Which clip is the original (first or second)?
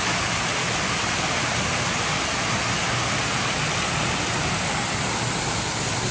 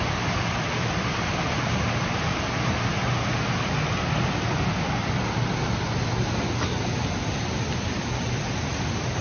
second